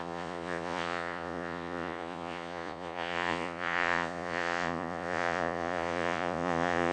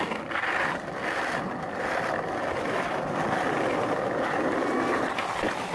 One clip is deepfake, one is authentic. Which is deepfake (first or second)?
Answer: first